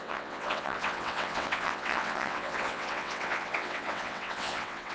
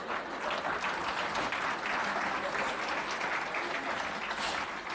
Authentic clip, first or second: second